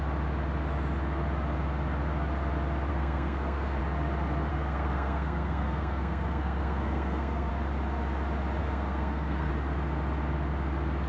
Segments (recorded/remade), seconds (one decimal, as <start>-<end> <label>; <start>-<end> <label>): 0.0-2.9 recorded; 2.9-3.8 remade; 3.8-4.5 recorded; 4.5-7.5 remade; 7.5-8.6 recorded; 8.6-9.5 remade; 9.5-11.1 recorded